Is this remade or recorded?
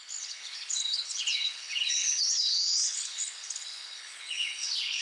remade